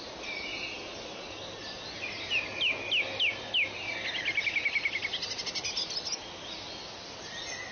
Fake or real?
real